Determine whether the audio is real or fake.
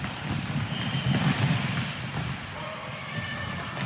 real